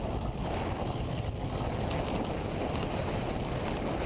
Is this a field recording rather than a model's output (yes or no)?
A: yes